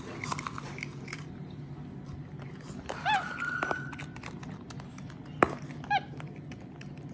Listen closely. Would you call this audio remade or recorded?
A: recorded